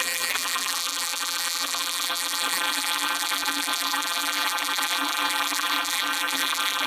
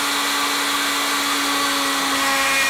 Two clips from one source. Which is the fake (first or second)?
first